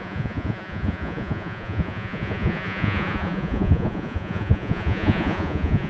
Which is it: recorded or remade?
remade